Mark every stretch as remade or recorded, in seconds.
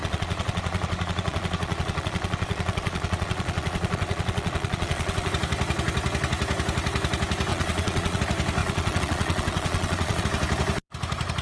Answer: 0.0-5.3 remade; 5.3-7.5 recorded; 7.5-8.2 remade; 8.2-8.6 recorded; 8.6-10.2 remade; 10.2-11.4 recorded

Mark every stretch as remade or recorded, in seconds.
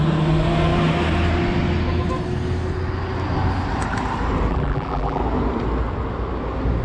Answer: 0.0-4.5 recorded; 4.5-5.2 remade; 5.2-6.8 recorded